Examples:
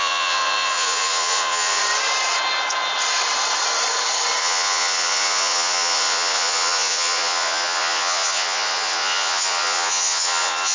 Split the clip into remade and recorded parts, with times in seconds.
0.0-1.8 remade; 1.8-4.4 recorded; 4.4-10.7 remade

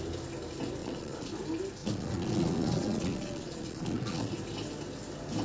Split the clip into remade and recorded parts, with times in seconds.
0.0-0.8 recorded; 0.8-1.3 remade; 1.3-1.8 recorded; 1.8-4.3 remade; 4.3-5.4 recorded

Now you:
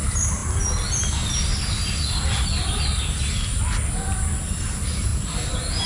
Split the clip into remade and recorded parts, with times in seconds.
0.0-5.9 recorded

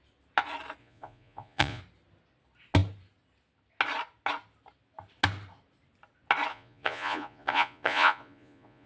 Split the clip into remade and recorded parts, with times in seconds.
0.0-0.8 recorded; 0.8-1.8 remade; 1.8-6.5 recorded; 6.5-8.9 remade